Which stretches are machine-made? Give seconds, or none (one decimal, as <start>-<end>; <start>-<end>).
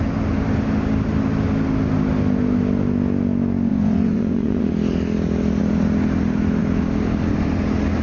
3.7-4.7